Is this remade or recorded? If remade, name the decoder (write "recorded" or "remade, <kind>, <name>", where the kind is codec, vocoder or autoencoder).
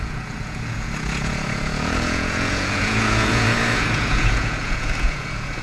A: remade, vocoder, Vocos